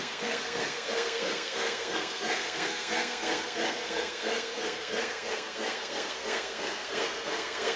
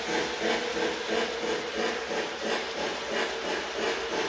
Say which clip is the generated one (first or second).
first